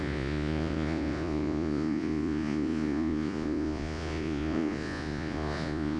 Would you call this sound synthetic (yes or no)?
yes